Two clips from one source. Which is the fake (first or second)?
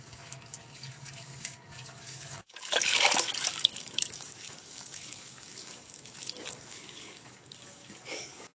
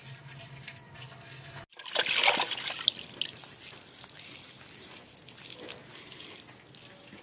first